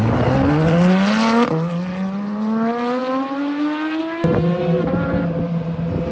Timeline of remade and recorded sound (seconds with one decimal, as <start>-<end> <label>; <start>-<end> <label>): 0.0-6.1 recorded